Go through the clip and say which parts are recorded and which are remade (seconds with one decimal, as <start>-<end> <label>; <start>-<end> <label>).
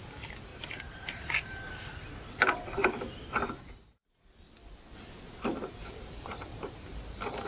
0.0-0.5 recorded; 0.5-2.4 remade; 2.4-7.5 recorded